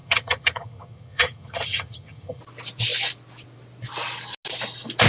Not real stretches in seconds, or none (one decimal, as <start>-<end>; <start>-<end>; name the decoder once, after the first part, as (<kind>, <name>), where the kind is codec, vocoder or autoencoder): 0.0-2.4 (vocoder, HiFi-GAN)

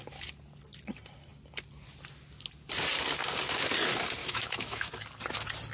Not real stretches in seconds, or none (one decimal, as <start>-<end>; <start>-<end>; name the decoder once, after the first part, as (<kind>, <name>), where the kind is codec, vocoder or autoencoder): 4.2-4.9 (autoencoder, DAC-VAE)

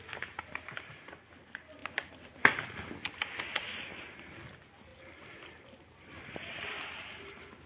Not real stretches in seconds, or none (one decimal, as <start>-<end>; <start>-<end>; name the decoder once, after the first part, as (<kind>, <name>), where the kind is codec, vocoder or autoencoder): 1.8-3.0 (vocoder, BigVGAN v2); 4.9-6.2

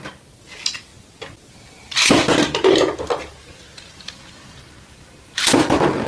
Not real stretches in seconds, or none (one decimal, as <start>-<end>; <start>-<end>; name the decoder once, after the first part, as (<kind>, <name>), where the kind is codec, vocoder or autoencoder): none